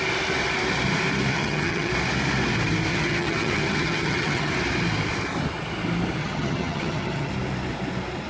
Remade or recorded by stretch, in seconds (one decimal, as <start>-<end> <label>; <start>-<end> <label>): 0.0-1.3 recorded; 1.3-1.9 remade; 1.9-2.9 recorded; 2.9-4.5 remade; 4.5-6.2 recorded; 6.2-7.3 remade; 7.3-8.3 recorded